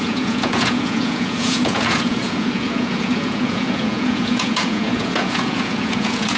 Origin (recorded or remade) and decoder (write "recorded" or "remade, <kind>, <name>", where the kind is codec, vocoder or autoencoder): remade, vocoder, Vocos